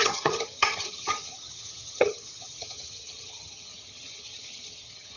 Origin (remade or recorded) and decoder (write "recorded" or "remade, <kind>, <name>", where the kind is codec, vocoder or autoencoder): remade, vocoder, HiFi-GAN